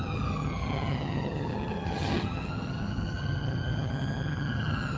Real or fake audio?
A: fake